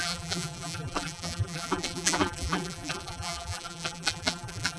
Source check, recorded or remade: remade